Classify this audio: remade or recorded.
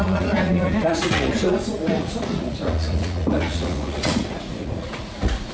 remade